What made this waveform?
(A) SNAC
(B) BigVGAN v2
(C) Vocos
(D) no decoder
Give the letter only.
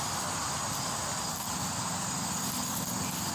D